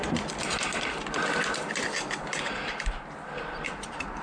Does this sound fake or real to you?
real